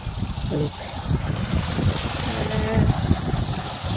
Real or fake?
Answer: real